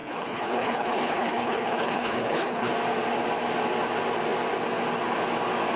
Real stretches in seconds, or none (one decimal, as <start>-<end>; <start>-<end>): 2.7-5.8